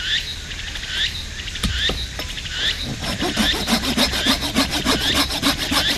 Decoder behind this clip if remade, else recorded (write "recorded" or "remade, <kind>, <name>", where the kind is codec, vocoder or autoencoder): recorded